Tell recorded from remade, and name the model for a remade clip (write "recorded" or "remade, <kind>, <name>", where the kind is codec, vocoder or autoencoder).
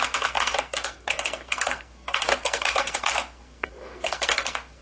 remade, codec, SNAC